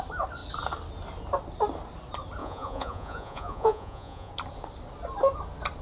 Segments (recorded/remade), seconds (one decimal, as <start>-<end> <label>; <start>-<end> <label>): 0.0-2.4 recorded; 2.4-4.3 remade; 4.3-5.8 recorded